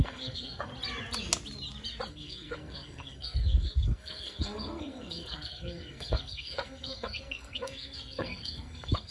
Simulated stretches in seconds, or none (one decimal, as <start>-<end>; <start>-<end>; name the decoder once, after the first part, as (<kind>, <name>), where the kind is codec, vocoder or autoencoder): 0.0-0.7 (codec, SNAC); 2.1-9.1